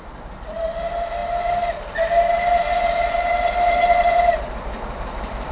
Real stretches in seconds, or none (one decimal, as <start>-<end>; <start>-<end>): 0.0-5.5

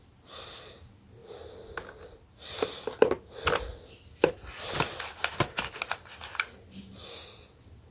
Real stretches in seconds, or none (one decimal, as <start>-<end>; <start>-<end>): 0.0-7.9

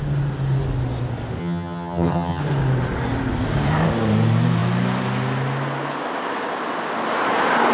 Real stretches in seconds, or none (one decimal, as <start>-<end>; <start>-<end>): 0.0-1.4; 2.4-7.7

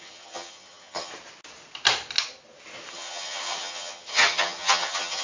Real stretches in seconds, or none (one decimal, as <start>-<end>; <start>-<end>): 1.1-2.9

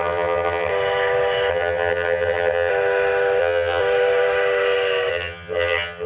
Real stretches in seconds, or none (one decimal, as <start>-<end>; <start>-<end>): 0.7-1.5; 2.7-3.4; 3.8-5.1

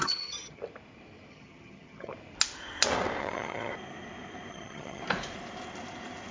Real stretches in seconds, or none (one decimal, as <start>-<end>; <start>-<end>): 0.6-1.3; 2.1-3.2; 3.7-4.5; 5.0-6.3

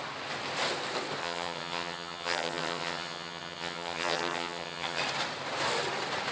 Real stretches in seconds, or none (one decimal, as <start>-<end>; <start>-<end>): 0.0-1.2; 5.0-6.3

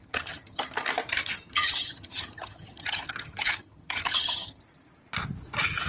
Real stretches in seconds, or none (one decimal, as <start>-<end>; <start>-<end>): 0.6-1.1; 4.6-5.9